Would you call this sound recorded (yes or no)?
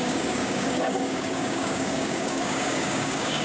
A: no